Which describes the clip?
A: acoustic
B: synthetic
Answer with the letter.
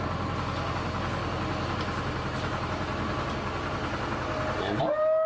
A